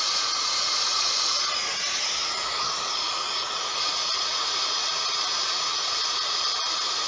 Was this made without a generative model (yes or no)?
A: no